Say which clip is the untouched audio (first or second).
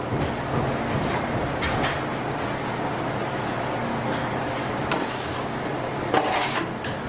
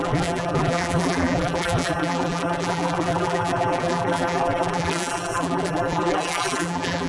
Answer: first